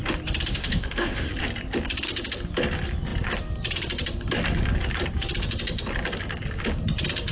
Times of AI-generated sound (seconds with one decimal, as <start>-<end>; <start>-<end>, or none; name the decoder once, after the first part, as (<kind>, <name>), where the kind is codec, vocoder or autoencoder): 0.5-1.3 (autoencoder, DAC-VAE)